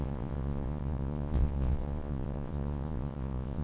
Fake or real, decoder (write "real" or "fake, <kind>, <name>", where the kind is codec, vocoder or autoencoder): fake, vocoder, Vocos